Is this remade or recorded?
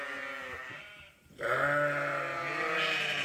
recorded